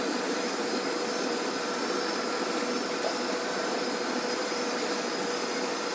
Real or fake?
fake